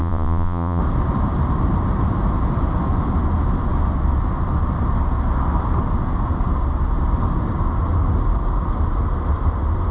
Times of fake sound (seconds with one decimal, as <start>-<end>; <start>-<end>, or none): 0.0-0.8